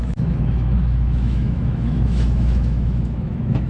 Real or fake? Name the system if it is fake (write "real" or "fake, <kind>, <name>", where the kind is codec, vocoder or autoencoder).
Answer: fake, autoencoder, DAC-VAE